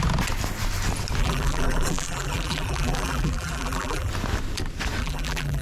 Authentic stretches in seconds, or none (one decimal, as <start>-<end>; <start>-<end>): 0.0-1.2; 4.1-5.0